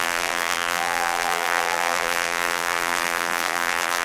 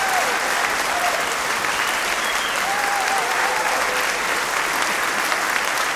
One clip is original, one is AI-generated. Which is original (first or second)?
second